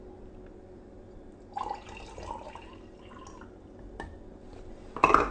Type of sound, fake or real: real